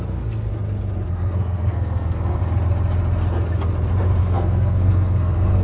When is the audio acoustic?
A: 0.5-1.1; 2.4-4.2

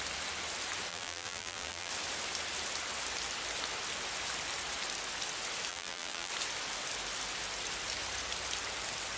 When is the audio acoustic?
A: 0.0-0.9; 1.9-5.7; 6.3-9.2